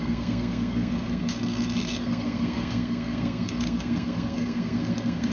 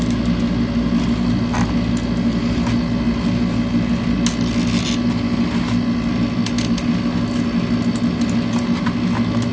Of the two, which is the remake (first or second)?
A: first